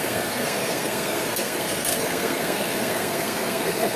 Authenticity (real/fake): fake